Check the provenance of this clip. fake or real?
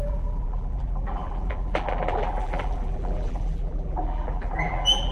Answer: fake